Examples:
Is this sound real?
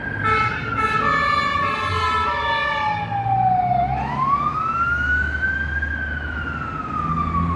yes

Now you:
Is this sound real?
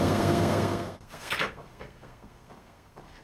no